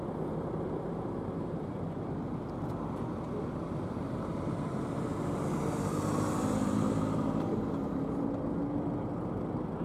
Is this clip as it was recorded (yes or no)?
no